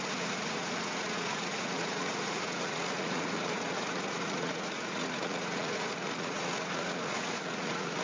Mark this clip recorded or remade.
remade